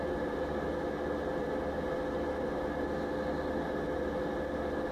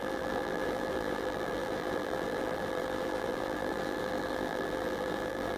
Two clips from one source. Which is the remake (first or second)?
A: second